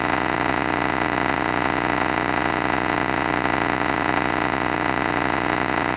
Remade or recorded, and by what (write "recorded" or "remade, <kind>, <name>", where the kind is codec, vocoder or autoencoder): remade, vocoder, Vocos